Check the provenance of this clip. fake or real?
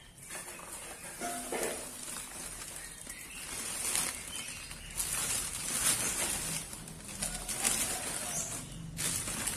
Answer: real